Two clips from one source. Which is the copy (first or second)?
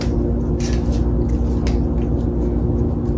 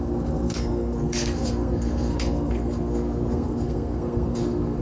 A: second